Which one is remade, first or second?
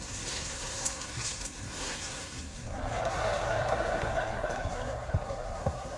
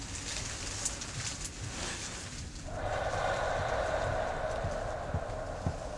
first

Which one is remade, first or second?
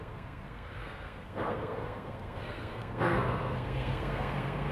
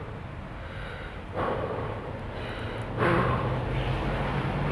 first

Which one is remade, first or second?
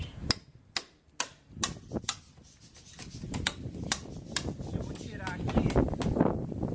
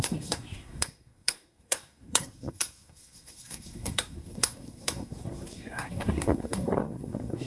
second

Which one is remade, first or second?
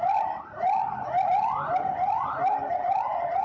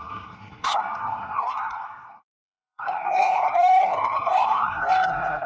second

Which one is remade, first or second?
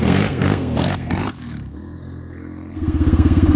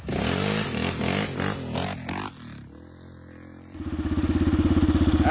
first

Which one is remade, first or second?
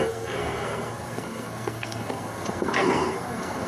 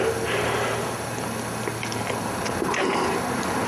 first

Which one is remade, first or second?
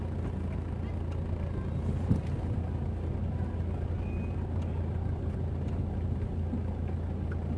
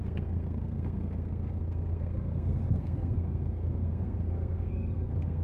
second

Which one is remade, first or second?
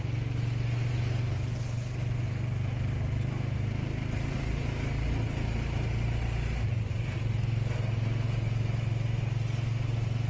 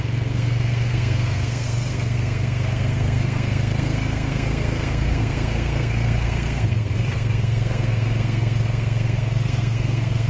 second